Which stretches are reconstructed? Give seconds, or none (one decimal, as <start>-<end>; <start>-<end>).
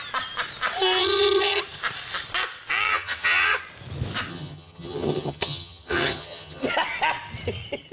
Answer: 1.0-1.6; 2.9-3.6; 4.3-6.7